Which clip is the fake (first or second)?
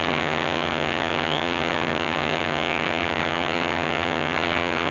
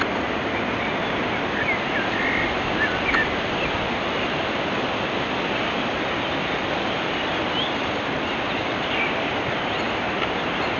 first